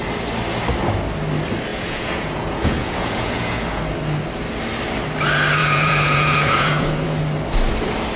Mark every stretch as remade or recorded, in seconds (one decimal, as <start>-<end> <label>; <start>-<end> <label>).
0.0-1.7 recorded; 1.7-3.8 remade; 3.8-5.6 recorded; 5.6-7.2 remade; 7.2-8.2 recorded